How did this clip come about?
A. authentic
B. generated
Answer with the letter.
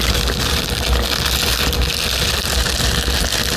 A